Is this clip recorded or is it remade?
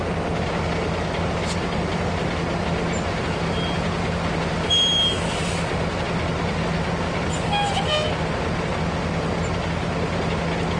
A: recorded